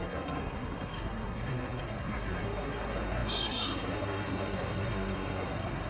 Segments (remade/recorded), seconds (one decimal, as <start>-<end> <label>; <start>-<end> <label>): 0.0-5.9 remade